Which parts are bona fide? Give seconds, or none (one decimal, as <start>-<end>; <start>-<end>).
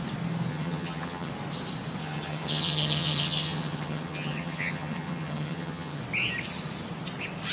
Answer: 0.0-0.5; 1.3-2.0; 6.0-7.5